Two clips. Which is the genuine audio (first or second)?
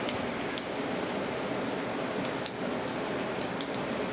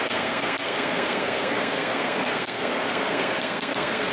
first